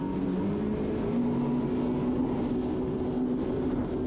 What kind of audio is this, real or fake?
real